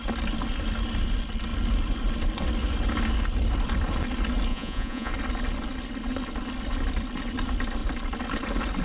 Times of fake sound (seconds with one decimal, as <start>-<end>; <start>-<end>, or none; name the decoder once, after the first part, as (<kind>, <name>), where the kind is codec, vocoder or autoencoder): 4.5-5.1 (vocoder, Vocos)